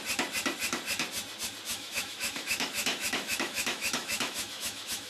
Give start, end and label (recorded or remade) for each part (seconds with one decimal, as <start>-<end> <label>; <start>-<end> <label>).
0.0-1.7 recorded; 1.7-5.1 remade